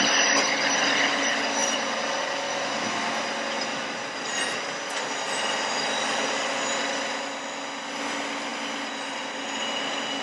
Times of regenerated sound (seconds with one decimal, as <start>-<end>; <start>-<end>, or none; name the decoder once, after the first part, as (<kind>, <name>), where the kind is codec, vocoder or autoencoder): none